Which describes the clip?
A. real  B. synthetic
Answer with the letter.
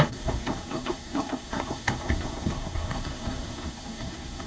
B